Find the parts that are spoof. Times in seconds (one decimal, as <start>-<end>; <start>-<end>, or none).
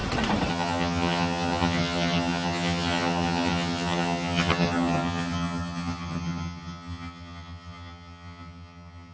0.5-9.1